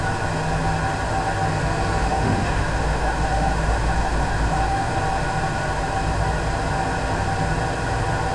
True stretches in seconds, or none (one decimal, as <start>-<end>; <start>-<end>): 0.0-2.0; 4.9-8.3